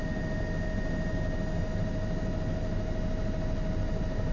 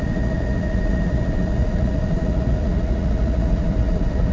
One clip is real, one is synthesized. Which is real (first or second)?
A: first